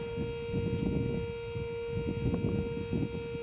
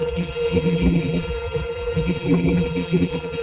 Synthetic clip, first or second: second